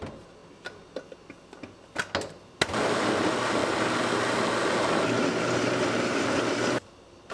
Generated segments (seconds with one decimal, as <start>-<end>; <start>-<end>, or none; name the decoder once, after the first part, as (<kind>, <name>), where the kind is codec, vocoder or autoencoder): none